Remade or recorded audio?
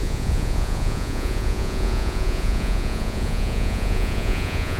remade